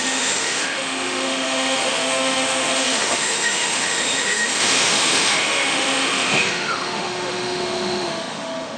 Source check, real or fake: fake